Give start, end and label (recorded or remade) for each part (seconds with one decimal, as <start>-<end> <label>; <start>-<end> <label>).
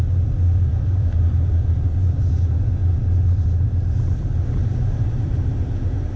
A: 0.0-0.7 recorded; 0.7-1.2 remade; 1.2-6.2 recorded